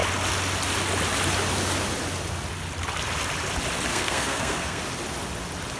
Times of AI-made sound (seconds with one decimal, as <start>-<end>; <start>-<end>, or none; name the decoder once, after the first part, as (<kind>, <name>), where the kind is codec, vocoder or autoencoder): 3.9-4.8 (codec, SNAC)